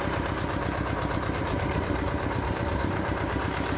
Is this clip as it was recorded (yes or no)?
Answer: no